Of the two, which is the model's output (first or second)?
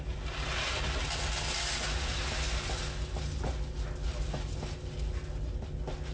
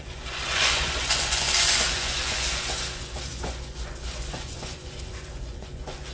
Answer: second